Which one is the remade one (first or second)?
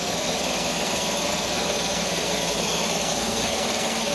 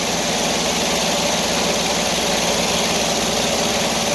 first